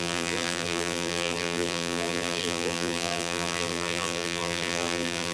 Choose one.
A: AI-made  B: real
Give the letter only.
A